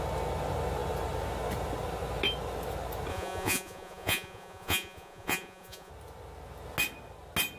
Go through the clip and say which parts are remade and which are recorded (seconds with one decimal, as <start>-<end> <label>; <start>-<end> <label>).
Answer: 0.0-3.1 recorded; 3.1-5.9 remade; 5.9-7.6 recorded